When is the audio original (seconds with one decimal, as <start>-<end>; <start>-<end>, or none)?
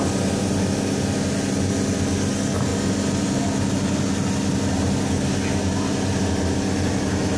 0.0-7.4